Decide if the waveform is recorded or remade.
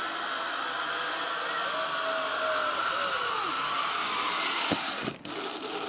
recorded